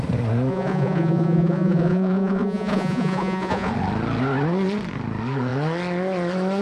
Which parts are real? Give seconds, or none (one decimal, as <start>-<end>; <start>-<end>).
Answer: 0.0-0.5; 3.7-6.6